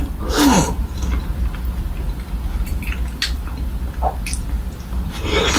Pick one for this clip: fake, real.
fake